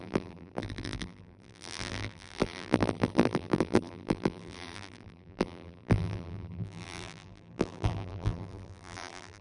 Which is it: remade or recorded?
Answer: remade